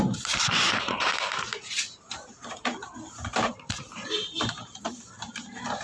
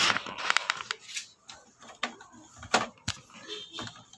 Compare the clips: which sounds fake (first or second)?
first